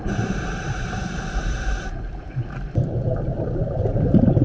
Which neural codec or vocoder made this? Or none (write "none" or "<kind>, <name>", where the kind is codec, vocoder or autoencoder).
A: vocoder, BigVGAN v2